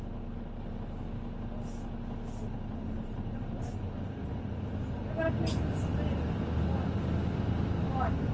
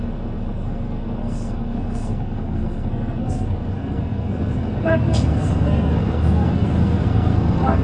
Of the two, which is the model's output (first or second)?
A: second